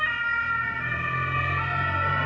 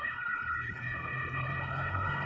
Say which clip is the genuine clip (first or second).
first